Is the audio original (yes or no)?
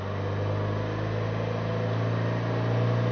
yes